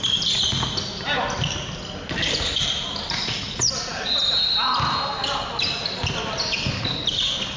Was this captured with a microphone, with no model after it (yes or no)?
yes